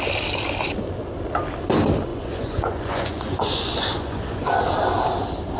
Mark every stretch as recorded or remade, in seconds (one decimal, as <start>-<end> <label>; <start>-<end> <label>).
0.0-2.1 recorded; 2.1-4.5 remade; 4.5-5.6 recorded

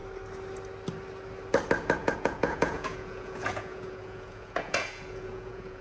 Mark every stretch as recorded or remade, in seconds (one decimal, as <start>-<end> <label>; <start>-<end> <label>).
0.0-2.0 recorded; 2.0-5.8 remade

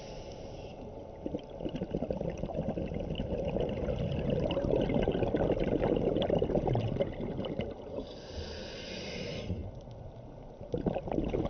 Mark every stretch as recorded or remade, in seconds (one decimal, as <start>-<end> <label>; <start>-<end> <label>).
0.0-11.5 recorded

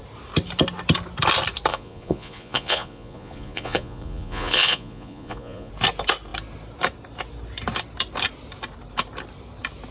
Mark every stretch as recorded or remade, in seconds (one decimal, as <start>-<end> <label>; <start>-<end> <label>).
0.0-1.7 recorded; 1.7-5.7 remade; 5.7-9.9 recorded

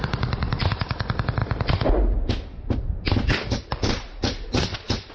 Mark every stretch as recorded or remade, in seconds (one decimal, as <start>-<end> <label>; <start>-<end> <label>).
0.0-5.1 recorded

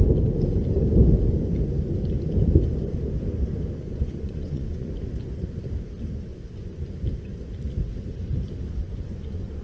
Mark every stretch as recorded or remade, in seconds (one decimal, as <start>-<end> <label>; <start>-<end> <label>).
0.0-3.8 recorded; 3.8-4.9 remade; 4.9-6.3 recorded; 6.3-6.8 remade; 6.8-8.8 recorded; 8.8-9.6 remade

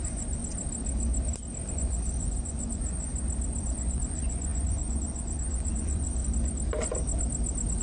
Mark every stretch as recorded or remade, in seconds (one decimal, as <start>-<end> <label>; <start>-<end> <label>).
0.0-0.4 remade; 0.4-1.7 recorded; 1.7-3.1 remade; 3.1-3.6 recorded; 3.6-6.2 remade; 6.2-7.8 recorded